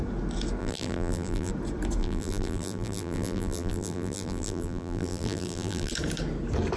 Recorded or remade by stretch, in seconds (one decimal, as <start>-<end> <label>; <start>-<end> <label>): 0.0-0.6 recorded; 0.6-1.5 remade; 1.5-2.0 recorded; 2.0-5.9 remade; 5.9-6.8 recorded